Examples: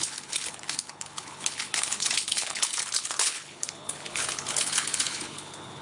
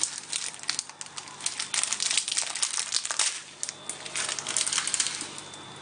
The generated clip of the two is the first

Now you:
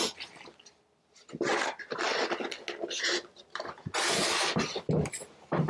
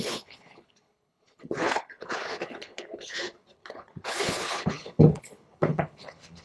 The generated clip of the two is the second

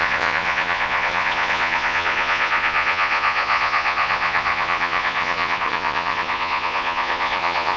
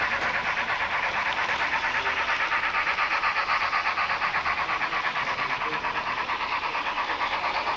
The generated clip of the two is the first